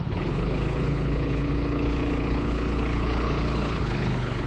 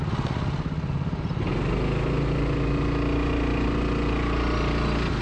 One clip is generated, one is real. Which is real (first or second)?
second